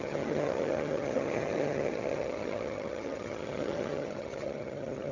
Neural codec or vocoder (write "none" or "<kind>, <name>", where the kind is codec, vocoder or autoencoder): vocoder, HiFi-GAN